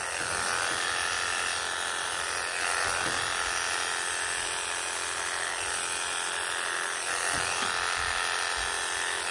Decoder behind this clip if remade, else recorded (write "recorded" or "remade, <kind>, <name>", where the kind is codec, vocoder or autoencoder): recorded